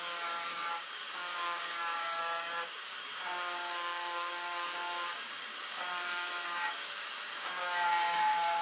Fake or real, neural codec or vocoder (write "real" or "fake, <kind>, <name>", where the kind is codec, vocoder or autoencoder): fake, codec, DAC